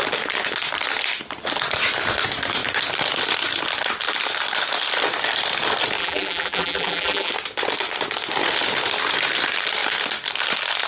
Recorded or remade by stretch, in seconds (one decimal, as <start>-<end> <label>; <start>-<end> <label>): 0.0-6.0 recorded; 6.0-7.3 remade; 7.3-10.9 recorded